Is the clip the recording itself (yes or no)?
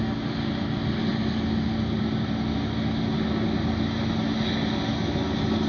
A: yes